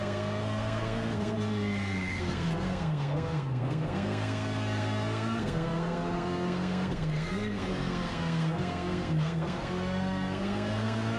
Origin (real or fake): fake